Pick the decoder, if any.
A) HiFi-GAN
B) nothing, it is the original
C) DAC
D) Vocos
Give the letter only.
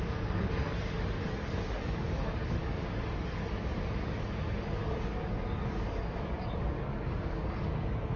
C